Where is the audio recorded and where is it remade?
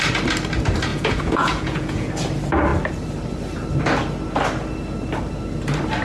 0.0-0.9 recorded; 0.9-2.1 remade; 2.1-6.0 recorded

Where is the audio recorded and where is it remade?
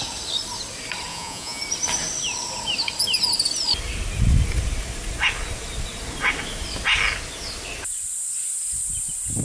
0.0-1.1 recorded; 1.1-1.6 remade; 1.6-9.4 recorded